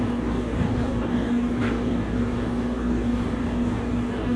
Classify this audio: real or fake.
fake